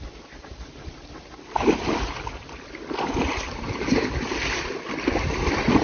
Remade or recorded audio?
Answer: recorded